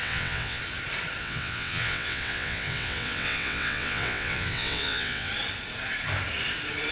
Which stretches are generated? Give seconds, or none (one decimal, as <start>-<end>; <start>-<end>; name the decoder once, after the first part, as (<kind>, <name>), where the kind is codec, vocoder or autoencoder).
0.0-0.6 (vocoder, WaveNeXt); 1.2-5.3